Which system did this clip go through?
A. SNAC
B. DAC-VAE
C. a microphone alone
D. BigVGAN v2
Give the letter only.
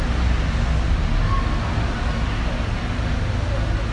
C